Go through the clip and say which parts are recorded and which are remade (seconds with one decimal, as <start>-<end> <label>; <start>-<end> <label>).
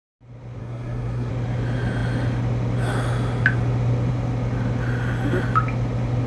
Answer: 0.0-0.6 recorded; 0.6-1.3 remade; 1.3-6.3 recorded